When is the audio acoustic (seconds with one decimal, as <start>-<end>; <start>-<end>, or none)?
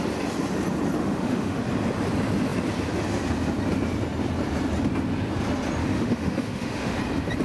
0.0-1.0; 1.6-5.8; 7.0-7.4